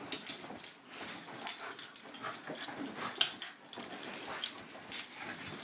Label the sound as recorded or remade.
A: recorded